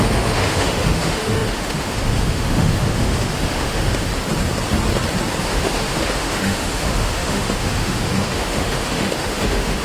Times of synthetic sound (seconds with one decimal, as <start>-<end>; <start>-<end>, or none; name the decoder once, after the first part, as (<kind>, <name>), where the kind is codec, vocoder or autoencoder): 0.0-4.1 (autoencoder, DAC-VAE); 5.4-9.8